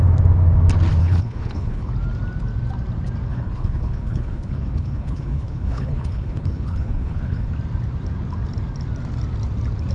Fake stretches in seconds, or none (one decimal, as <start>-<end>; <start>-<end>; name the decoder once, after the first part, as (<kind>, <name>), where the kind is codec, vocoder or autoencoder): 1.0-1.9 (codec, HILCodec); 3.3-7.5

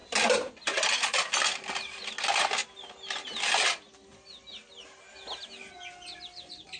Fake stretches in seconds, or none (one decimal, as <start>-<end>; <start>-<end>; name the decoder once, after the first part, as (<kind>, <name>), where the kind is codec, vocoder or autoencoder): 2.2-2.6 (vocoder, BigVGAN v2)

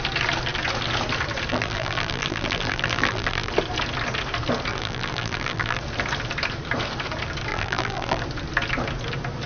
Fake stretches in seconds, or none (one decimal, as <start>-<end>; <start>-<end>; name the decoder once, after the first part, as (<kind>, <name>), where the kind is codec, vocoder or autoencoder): 1.5-3.5 (vocoder, BigVGAN v2); 4.7-5.8; 7.5-8.2

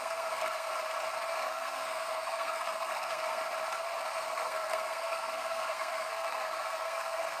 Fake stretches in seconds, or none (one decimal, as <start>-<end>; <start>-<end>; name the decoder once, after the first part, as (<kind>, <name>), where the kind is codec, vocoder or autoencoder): 0.0-0.7 (codec, SNAC); 1.3-3.4; 4.1-7.4

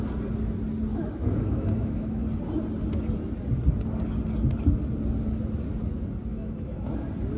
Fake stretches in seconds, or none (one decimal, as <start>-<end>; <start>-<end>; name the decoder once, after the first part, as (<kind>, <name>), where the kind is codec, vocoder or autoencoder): 0.9-2.2 (autoencoder, DAC-VAE); 6.3-7.0

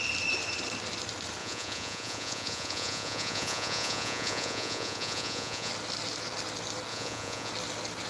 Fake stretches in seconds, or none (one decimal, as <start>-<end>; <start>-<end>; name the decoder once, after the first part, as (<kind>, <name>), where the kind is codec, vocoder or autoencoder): 1.4-5.7 (vocoder, Vocos); 6.9-7.5